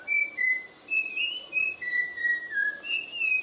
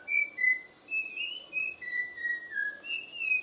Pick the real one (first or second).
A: second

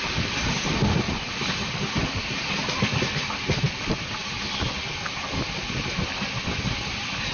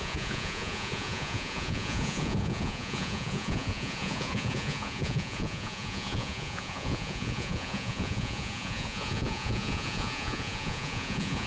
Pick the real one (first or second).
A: first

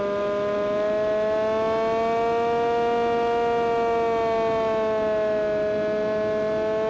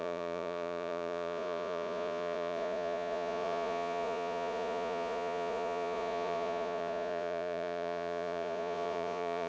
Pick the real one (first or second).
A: first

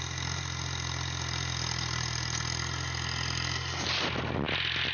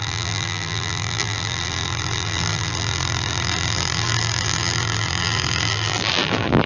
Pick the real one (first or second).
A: first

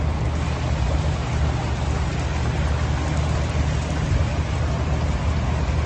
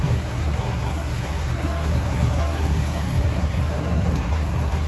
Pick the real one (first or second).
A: first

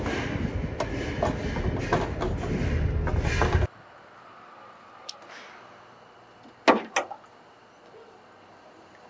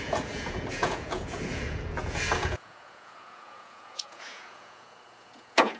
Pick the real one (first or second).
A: first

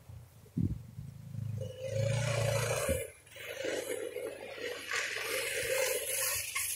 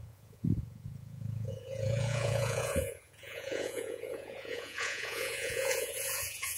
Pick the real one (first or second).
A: first